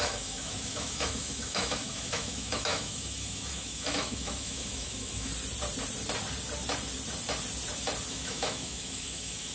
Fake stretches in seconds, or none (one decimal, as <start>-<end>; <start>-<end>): 0.0-5.3; 8.1-9.5